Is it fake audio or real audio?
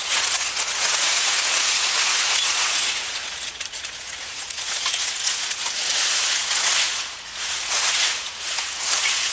fake